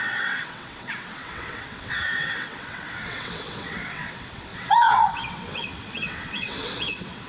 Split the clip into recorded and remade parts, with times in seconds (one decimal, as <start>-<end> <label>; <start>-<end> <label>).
0.0-7.3 remade